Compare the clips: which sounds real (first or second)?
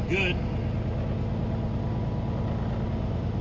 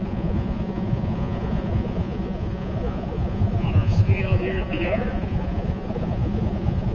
first